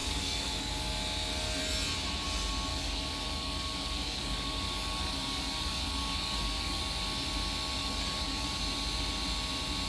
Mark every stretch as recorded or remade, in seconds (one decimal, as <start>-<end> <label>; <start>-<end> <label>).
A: 0.0-0.7 remade; 0.7-2.7 recorded; 2.7-6.8 remade; 6.8-7.8 recorded; 7.8-8.6 remade; 8.6-9.9 recorded